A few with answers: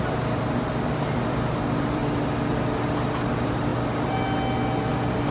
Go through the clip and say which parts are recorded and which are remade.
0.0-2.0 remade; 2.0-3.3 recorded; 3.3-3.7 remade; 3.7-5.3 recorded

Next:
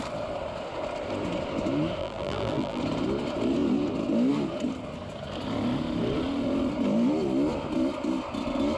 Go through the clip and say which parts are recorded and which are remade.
0.0-2.0 recorded; 2.0-2.8 remade; 2.8-8.8 recorded

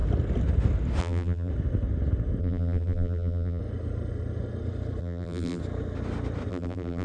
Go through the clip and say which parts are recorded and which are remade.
0.0-1.0 recorded; 1.0-1.5 remade; 1.5-2.4 recorded; 2.4-3.6 remade; 3.6-5.0 recorded; 5.0-5.6 remade; 5.6-6.5 recorded; 6.5-7.0 remade

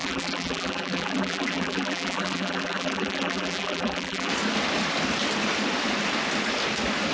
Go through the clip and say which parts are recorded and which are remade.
0.0-4.3 remade; 4.3-7.1 recorded